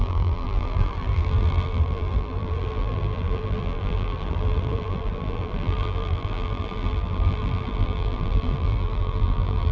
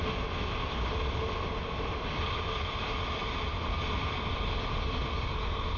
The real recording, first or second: second